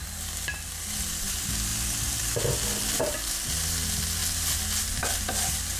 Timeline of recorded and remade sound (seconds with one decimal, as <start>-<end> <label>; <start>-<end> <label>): 0.0-1.7 recorded; 1.7-3.0 remade; 3.0-5.8 recorded